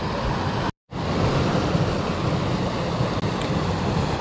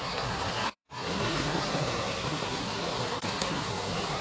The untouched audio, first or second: first